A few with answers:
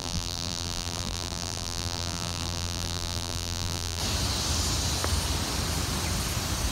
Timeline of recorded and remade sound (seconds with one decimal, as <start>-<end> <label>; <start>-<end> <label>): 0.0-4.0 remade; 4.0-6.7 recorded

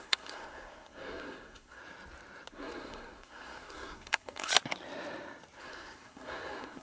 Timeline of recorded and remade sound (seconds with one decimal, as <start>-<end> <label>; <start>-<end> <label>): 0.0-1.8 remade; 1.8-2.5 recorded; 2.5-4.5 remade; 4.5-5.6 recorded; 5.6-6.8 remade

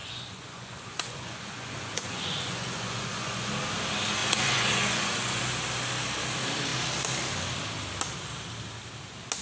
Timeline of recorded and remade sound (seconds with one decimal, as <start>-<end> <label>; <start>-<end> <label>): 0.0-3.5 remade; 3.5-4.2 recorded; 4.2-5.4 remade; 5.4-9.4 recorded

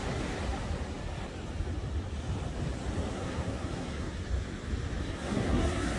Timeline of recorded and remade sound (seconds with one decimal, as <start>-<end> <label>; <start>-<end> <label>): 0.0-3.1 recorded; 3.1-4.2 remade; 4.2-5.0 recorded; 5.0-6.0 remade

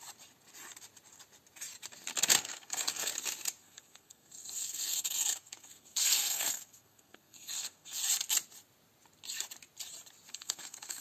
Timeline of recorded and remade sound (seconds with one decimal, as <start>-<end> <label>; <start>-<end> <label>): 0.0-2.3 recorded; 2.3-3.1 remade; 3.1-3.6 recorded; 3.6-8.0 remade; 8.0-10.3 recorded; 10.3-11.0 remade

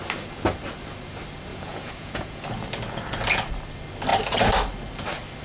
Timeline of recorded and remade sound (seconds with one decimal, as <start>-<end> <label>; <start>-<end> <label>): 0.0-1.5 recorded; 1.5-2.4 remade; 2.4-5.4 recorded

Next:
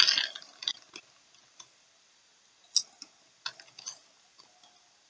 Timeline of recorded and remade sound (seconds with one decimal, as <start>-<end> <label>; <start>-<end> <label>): 0.0-5.1 recorded

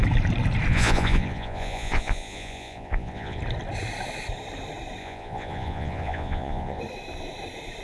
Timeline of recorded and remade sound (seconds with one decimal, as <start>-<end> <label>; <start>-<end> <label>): 0.0-0.7 recorded; 0.7-3.4 remade; 3.4-5.0 recorded; 5.0-6.8 remade; 6.8-7.8 recorded